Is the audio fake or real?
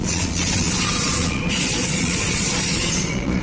fake